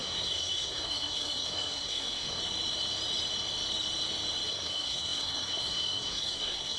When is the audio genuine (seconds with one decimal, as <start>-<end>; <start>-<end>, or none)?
2.4-4.5